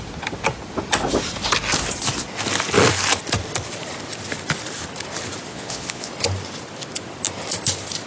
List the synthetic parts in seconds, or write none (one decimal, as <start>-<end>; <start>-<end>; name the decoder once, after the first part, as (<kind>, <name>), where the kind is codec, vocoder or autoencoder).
5.5-6.1 (vocoder, Vocos)

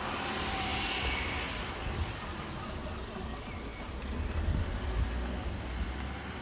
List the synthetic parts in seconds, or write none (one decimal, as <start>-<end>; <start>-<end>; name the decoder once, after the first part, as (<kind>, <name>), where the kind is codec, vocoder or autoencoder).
none

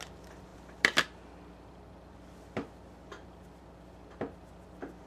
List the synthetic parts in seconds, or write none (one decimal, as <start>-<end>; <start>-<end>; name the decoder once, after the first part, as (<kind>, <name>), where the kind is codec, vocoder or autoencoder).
none

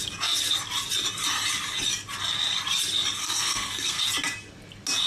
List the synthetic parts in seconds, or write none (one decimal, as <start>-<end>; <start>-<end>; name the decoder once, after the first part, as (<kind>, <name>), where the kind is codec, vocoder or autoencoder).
3.2-4.0 (codec, SNAC)

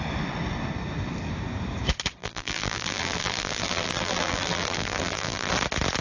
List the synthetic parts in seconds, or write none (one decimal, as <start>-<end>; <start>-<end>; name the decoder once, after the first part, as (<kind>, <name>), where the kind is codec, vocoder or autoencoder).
2.2-5.5 (vocoder, BigVGAN v2)

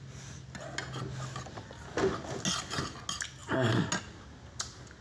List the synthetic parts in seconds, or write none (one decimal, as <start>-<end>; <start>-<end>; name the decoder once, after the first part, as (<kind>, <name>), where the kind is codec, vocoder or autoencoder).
none

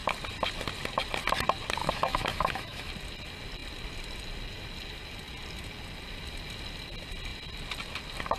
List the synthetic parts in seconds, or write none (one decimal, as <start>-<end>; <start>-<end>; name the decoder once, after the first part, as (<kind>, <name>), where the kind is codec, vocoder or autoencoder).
1.8-2.9 (autoencoder, DAC-VAE)